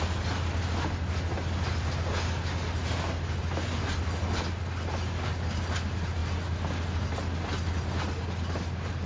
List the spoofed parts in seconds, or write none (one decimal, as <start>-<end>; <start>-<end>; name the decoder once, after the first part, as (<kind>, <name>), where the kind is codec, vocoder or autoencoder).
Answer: none